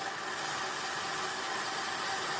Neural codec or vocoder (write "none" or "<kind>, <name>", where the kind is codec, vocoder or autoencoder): none